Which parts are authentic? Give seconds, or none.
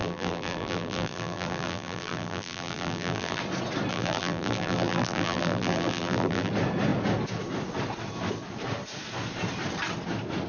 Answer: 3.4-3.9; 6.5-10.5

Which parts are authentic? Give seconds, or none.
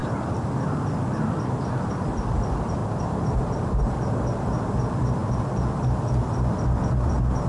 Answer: 0.0-2.8; 3.8-7.5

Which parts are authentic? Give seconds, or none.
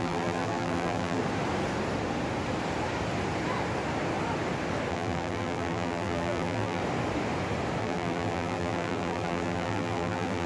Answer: 1.2-4.9; 6.8-7.8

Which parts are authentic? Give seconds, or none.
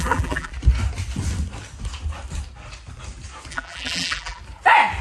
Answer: 0.5-3.5; 4.4-5.0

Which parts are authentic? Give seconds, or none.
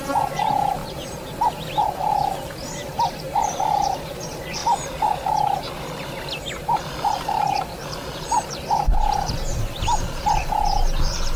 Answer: 0.0-11.4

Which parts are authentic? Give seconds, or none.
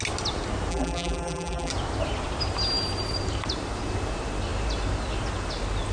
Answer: 0.0-0.7; 1.7-5.9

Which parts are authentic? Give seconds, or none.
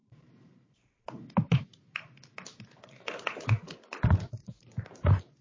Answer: 3.2-4.4